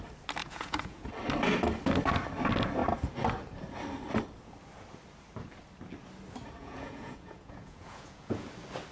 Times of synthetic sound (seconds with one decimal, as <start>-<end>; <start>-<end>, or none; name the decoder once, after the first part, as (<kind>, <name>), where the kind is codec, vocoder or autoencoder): 0.4-1.1 (vocoder, Vocos); 6.6-8.5